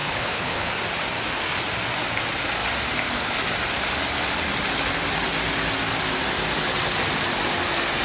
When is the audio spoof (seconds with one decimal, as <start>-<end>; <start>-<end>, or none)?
0.0-0.7